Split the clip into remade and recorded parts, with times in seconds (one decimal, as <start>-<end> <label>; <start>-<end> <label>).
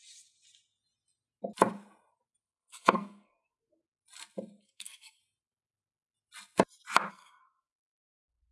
0.0-2.4 recorded; 2.4-3.8 remade; 3.8-4.6 recorded; 4.6-5.2 remade; 5.2-7.1 recorded; 7.1-8.5 remade